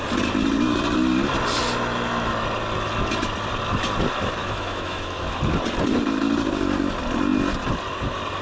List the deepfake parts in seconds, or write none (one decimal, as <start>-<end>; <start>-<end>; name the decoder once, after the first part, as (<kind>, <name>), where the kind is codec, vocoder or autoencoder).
4.4-5.4 (autoencoder, DAC-VAE)